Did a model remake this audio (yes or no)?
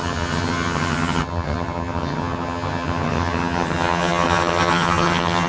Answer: yes